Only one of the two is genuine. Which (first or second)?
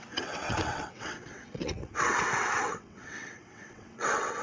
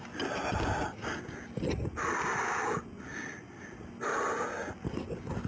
second